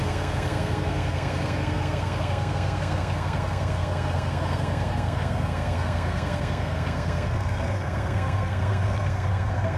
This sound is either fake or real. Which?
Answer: fake